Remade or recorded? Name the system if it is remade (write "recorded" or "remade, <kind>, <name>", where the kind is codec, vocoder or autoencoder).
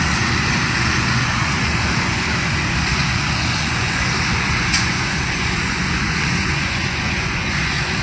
remade, vocoder, Vocos